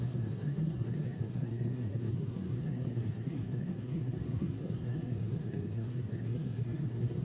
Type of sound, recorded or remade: remade